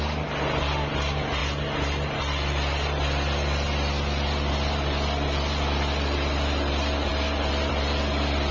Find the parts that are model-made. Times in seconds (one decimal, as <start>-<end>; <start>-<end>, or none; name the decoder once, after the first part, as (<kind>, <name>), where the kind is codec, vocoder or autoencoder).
none